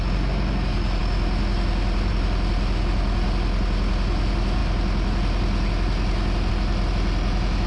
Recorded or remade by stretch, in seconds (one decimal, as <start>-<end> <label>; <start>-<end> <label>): 0.0-7.7 recorded